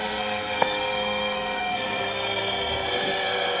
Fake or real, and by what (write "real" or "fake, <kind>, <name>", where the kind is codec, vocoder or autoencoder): fake, codec, SNAC